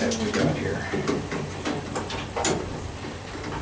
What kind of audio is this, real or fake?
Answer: fake